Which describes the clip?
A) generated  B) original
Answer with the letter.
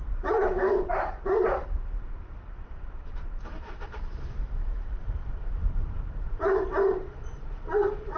A